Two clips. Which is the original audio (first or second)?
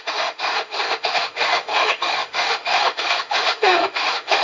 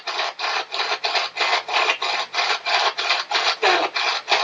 second